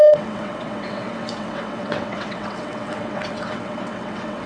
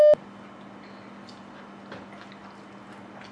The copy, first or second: first